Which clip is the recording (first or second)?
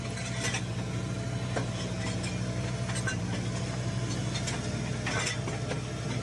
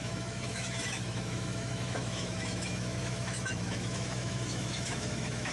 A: first